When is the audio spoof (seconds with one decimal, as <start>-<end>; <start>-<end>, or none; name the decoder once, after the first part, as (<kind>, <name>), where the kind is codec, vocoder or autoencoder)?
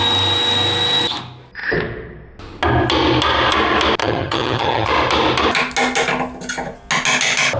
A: 4.0-4.9 (vocoder, HiFi-GAN)